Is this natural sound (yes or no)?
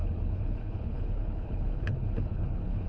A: no